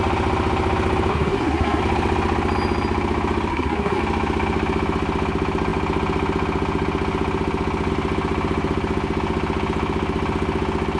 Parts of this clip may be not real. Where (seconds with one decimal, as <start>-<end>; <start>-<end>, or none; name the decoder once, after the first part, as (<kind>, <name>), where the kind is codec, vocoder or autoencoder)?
1.1-1.8 (codec, SNAC); 3.5-4.0